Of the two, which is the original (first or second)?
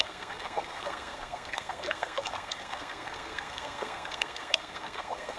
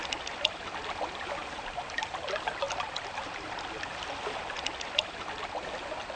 second